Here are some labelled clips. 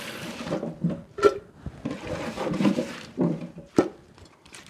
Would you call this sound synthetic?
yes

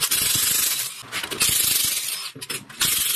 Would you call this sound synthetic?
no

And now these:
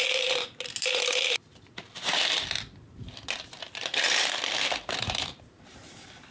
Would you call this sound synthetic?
yes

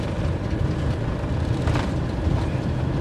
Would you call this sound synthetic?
no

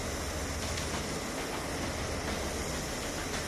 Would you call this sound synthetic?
no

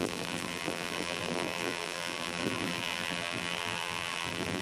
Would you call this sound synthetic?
yes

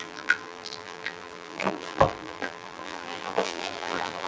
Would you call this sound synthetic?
yes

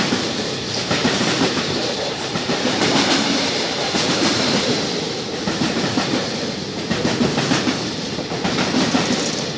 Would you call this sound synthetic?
yes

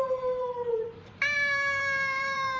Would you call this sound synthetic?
yes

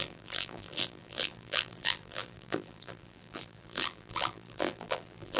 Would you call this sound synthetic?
yes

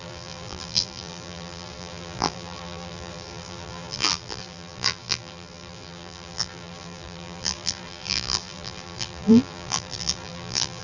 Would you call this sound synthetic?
yes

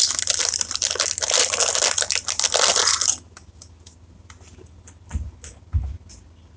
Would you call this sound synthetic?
no